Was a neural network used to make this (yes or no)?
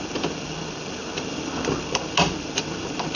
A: no